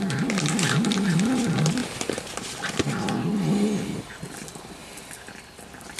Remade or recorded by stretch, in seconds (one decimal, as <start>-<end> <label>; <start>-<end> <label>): 0.0-1.8 recorded; 1.8-4.0 remade; 4.0-4.8 recorded; 4.8-5.3 remade; 5.3-6.0 recorded

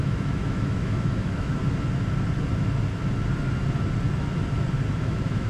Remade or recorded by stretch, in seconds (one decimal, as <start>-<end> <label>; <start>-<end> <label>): 0.0-1.6 remade; 1.6-4.9 recorded; 4.9-5.5 remade

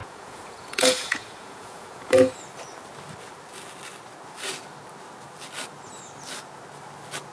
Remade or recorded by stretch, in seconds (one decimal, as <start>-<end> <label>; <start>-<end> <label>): 0.0-2.3 remade; 2.3-7.3 recorded

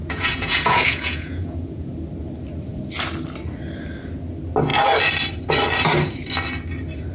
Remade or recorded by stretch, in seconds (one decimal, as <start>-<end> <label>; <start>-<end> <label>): 0.0-1.9 remade; 1.9-7.1 recorded

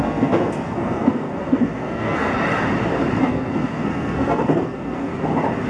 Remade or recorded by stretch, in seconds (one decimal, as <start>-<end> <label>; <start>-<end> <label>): 0.0-2.3 remade; 2.3-3.2 recorded; 3.2-5.1 remade; 5.1-5.7 recorded

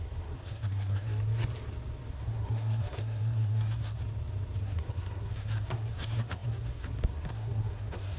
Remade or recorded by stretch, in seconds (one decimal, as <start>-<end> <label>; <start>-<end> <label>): 0.0-1.2 remade; 1.2-2.1 recorded; 2.1-4.0 remade; 4.0-4.6 recorded; 4.6-8.2 remade

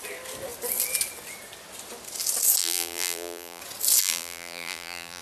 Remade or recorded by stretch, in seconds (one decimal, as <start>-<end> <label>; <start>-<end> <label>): 0.0-2.6 recorded; 2.6-3.6 remade; 3.6-4.0 recorded; 4.0-5.2 remade